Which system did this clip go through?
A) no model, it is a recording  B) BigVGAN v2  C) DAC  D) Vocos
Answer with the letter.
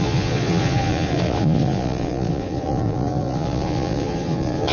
D